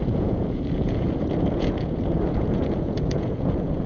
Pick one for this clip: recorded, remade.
remade